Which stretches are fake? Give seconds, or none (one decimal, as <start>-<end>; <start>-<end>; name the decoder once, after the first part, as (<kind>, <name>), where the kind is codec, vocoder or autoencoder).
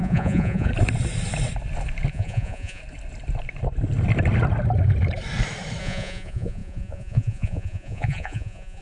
0.0-0.7 (vocoder, Vocos); 2.1-2.8; 5.8-8.8